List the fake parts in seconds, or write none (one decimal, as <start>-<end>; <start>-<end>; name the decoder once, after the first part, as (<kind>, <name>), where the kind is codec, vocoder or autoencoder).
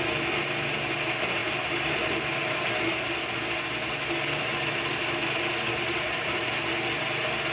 1.4-2.4 (vocoder, BigVGAN v2); 5.9-6.6